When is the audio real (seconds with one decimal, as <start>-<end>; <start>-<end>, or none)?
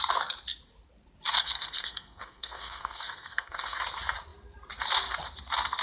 0.0-1.4; 3.8-5.8